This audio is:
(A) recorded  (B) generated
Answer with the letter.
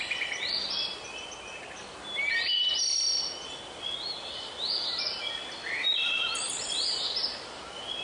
A